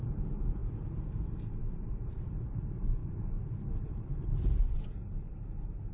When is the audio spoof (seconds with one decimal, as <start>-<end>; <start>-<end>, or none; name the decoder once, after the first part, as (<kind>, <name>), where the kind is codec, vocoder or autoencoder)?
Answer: 0.0-5.9 (vocoder, BigVGAN v2)